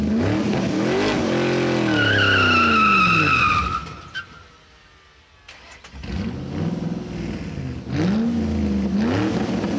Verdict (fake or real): real